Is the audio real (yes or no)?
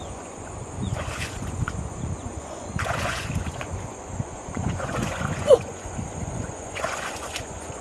no